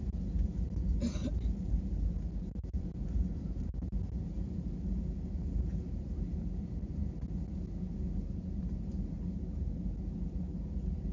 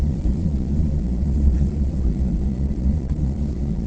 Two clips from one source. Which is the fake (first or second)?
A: second